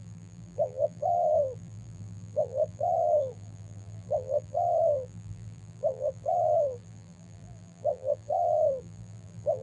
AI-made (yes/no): yes